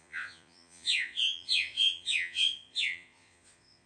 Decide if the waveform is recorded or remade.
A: remade